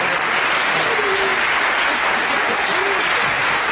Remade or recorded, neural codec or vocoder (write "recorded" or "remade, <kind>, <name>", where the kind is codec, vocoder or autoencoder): recorded